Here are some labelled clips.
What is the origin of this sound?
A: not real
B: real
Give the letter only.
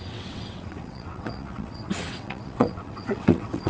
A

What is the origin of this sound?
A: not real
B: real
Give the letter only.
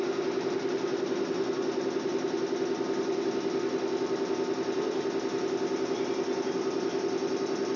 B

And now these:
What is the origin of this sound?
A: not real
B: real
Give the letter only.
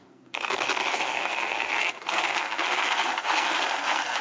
A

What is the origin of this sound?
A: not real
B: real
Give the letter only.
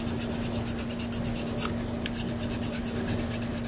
B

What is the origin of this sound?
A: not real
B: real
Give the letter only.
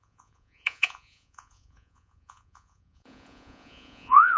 A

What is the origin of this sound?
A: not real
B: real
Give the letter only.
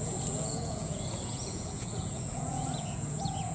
A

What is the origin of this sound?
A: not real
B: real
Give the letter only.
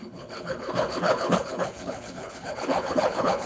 A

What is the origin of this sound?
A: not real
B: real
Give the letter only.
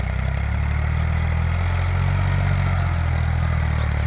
B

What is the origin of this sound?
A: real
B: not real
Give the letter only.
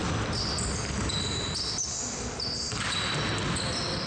A